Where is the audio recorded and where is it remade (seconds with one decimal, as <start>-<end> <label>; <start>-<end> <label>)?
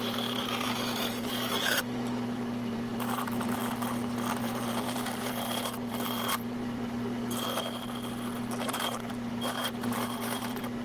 0.0-3.6 remade; 3.6-4.4 recorded; 4.4-7.2 remade; 7.2-8.7 recorded; 8.7-10.8 remade